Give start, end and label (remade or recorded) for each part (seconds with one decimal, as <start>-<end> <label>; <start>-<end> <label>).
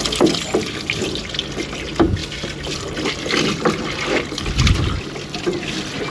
0.0-6.1 recorded